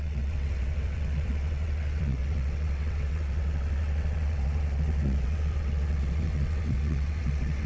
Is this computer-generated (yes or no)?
yes